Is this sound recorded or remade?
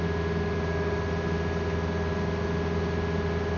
recorded